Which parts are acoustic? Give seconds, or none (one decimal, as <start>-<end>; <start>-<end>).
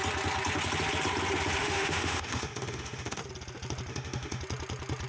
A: 0.0-1.6; 3.2-3.9; 4.4-5.1